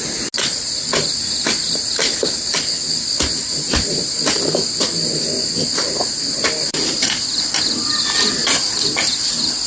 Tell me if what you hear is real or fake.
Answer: real